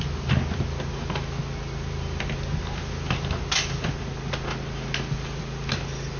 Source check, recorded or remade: recorded